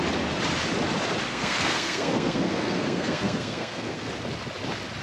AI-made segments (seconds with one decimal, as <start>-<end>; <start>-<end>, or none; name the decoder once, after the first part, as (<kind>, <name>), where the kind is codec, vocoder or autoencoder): 1.3-4.1 (codec, SNAC)